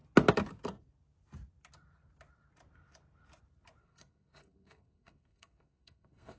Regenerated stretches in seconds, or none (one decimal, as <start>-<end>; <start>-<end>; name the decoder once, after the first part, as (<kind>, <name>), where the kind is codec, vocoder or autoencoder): 3.8-6.4 (codec, SNAC)